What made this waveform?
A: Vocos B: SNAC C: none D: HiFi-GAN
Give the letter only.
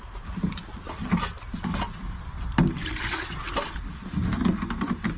C